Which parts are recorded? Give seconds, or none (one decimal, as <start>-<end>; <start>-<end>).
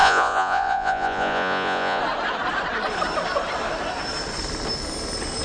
2.0-5.4